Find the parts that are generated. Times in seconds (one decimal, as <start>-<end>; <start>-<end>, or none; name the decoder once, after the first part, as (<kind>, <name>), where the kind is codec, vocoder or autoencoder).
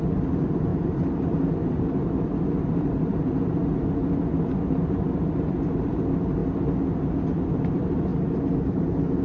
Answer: 0.0-0.7 (vocoder, BigVGAN v2); 2.7-3.6; 4.6-6.4; 7.5-8.1; 8.7-9.2